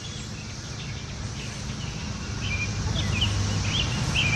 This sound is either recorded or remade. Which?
recorded